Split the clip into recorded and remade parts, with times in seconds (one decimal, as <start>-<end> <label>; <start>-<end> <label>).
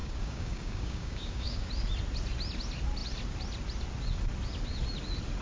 0.0-1.7 remade; 1.7-5.4 recorded